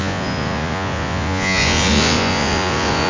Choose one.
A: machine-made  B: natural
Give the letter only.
A